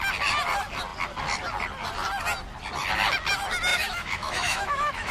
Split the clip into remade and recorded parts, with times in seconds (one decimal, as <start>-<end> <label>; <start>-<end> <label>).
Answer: 0.0-3.7 recorded; 3.7-5.1 remade